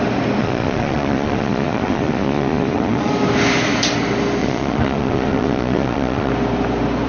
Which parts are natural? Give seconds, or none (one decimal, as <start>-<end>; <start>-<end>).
0.0-0.4; 3.1-4.4; 6.3-7.1